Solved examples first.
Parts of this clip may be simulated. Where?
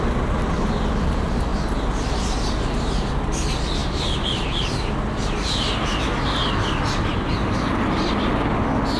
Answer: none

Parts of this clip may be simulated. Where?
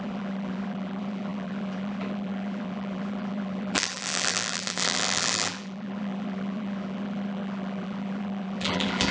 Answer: 0.0-9.1 (vocoder, BigVGAN v2)